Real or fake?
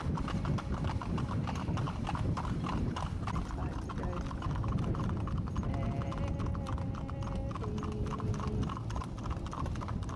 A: real